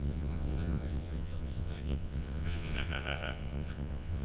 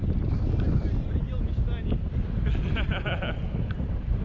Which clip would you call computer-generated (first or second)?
first